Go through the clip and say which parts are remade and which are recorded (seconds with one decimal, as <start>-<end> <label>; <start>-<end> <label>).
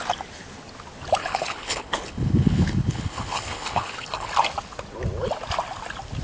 0.0-1.2 recorded; 1.2-4.3 remade; 4.3-6.2 recorded